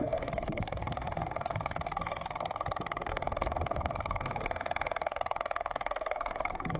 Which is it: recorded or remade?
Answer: remade